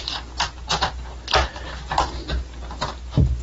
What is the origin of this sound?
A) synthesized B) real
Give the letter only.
B